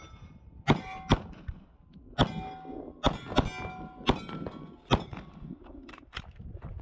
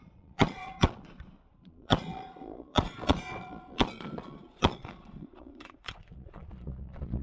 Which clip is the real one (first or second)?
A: first